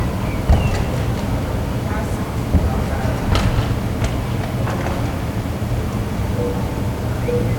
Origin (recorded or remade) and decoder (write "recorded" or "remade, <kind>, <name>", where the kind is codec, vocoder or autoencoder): recorded